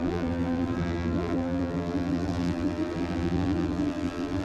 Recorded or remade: remade